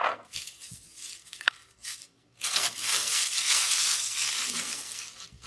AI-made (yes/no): yes